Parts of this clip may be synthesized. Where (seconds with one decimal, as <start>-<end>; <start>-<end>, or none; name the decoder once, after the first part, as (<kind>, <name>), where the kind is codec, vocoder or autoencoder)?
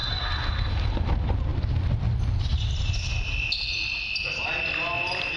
0.0-0.7 (vocoder, BigVGAN v2)